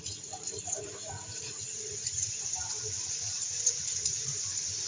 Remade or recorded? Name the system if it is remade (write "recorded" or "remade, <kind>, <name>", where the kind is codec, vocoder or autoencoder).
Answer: remade, vocoder, Vocos